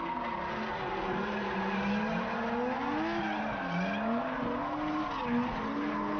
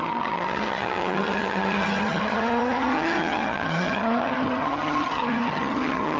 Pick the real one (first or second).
first